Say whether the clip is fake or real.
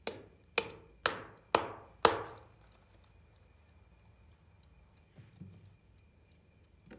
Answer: real